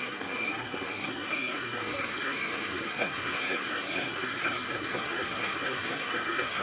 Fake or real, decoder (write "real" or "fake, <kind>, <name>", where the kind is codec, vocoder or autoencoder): fake, codec, SNAC